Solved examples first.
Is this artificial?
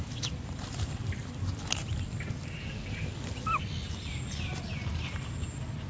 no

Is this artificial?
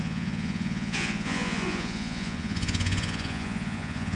yes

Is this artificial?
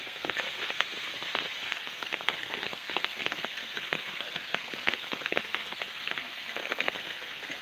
yes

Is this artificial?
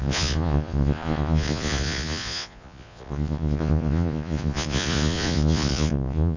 yes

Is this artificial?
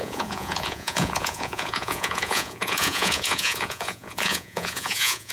yes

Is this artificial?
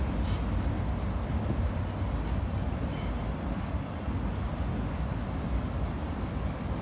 no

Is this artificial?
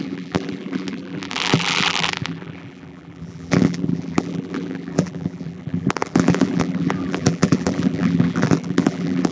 yes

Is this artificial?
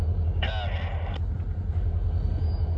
no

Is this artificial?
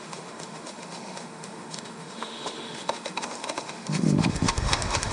yes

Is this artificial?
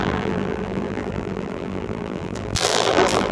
yes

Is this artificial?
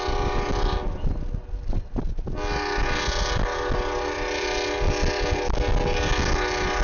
no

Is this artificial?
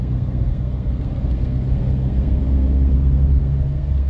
yes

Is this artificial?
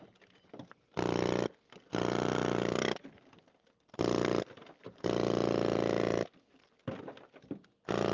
no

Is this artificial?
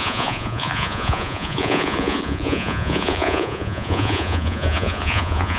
yes